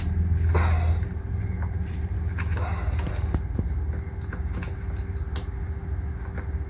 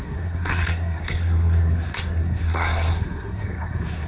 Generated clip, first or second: second